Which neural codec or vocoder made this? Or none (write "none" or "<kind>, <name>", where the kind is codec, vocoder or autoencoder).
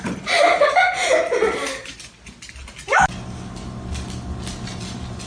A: none